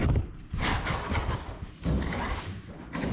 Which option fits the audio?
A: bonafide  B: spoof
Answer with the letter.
A